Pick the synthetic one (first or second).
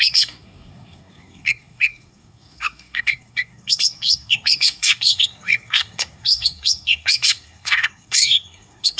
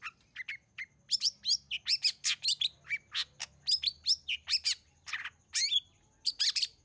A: first